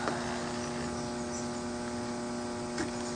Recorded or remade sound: recorded